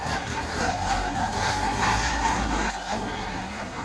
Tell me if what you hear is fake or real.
fake